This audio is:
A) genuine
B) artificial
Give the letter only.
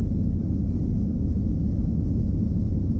A